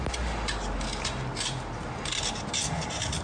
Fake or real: real